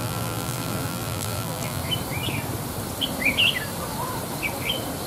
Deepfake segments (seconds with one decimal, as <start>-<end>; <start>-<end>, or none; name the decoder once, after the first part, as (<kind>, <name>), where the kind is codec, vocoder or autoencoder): 0.0-1.8 (vocoder, BigVGAN v2)